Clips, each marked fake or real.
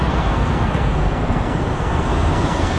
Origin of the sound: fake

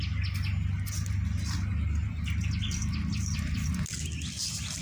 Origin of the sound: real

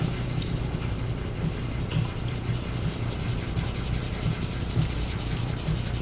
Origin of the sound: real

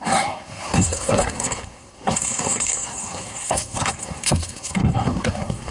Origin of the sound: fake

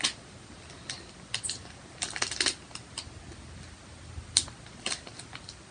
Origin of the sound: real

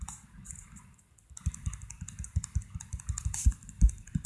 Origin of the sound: real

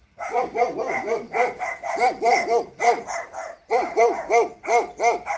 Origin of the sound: real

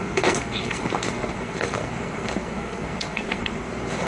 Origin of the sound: fake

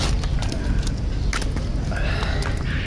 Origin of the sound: real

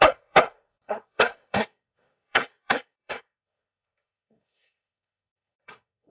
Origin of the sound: fake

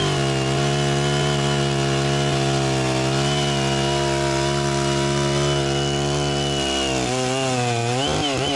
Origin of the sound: real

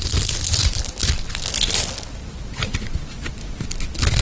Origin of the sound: real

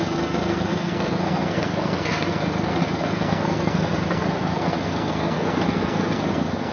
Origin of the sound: fake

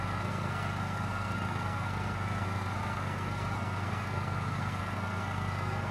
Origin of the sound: fake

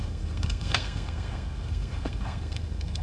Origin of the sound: fake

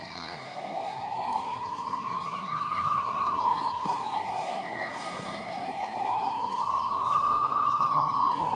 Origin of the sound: fake